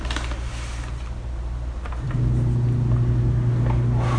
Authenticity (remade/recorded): recorded